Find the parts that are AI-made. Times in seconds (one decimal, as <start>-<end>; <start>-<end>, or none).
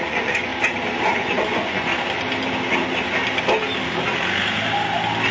0.0-0.5; 1.0-1.9